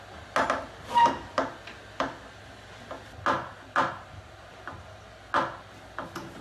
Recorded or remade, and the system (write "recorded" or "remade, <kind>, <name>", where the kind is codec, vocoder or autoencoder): recorded